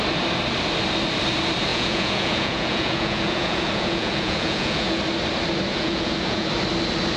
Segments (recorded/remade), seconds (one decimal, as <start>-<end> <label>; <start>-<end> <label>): 0.0-1.7 recorded; 1.7-5.0 remade; 5.0-5.7 recorded; 5.7-6.5 remade; 6.5-7.2 recorded